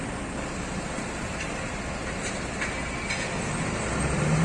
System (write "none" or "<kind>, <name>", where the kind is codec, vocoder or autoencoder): none